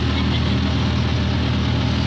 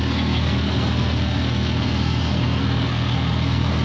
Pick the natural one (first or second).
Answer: first